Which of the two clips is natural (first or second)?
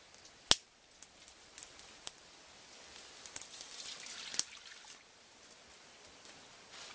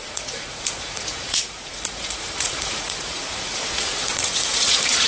first